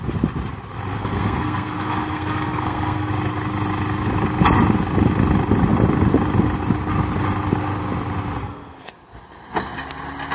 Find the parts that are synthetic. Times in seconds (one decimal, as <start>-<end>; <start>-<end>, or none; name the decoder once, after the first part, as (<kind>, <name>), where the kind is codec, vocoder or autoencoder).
1.0-3.1 (codec, SNAC); 8.4-8.9